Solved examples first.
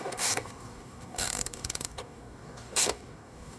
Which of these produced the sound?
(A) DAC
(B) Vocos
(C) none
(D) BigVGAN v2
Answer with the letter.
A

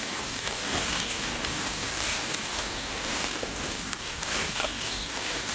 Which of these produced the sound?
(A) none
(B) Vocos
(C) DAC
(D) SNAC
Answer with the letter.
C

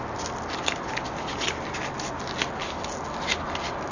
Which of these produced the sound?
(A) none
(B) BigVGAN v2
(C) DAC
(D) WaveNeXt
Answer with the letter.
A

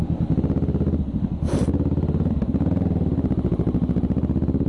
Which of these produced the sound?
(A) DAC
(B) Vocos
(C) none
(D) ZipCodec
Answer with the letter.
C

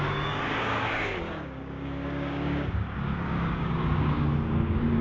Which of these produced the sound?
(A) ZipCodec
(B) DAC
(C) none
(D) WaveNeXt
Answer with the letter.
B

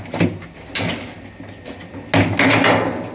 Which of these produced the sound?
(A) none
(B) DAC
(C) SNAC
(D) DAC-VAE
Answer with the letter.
A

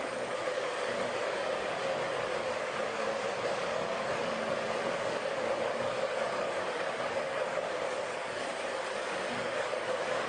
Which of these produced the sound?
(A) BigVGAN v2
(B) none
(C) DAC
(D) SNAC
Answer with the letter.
C